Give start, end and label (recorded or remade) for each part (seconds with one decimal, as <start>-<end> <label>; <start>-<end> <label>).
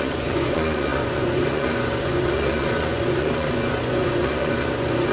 0.0-5.1 remade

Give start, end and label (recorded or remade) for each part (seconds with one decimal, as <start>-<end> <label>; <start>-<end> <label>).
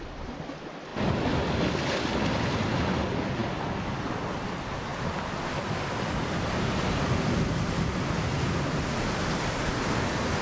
0.0-10.4 recorded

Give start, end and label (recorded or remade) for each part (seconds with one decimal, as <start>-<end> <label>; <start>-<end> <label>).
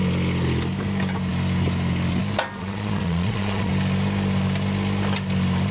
0.0-2.6 recorded; 2.6-3.7 remade; 3.7-5.7 recorded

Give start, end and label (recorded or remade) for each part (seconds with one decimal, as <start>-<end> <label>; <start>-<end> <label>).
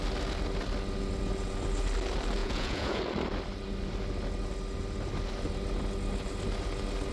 0.0-2.4 recorded; 2.4-3.0 remade; 3.0-7.1 recorded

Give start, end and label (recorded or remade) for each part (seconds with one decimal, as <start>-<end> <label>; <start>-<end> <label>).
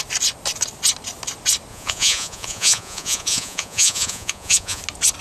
0.0-1.7 recorded; 1.7-4.8 remade; 4.8-5.2 recorded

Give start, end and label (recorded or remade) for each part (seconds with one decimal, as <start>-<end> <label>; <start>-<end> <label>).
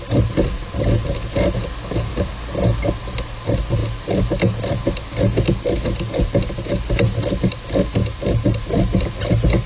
0.0-9.7 recorded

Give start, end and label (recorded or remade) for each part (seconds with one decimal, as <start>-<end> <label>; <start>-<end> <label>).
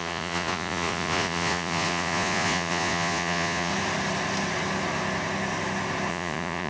0.0-3.7 remade; 3.7-6.1 recorded; 6.1-6.7 remade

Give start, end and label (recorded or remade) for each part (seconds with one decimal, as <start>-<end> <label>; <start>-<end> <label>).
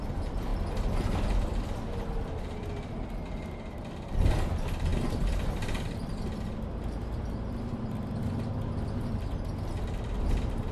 0.0-10.7 recorded